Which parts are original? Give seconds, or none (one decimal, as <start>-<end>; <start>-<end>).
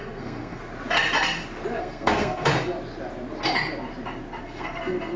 0.6-1.8; 2.5-4.4